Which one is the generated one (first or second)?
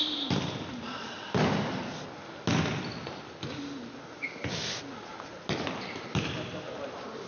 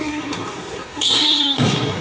second